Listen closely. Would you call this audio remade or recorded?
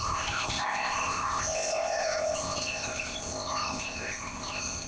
remade